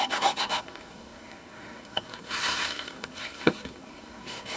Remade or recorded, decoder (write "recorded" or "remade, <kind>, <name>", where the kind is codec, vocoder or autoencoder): remade, codec, SNAC